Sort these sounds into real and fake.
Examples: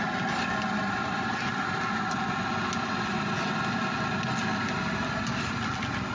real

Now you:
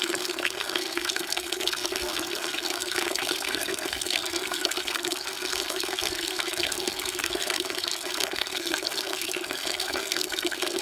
fake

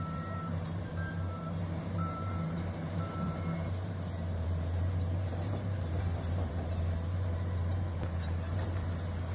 fake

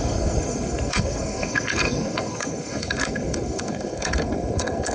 fake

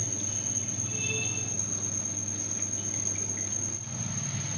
real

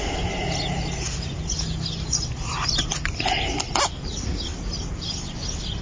real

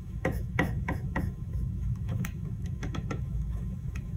fake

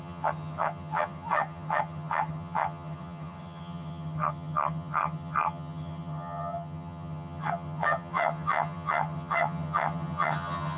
fake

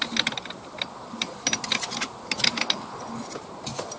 real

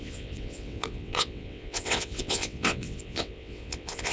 fake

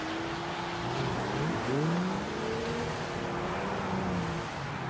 real